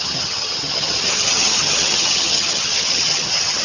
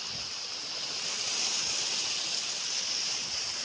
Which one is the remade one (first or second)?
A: first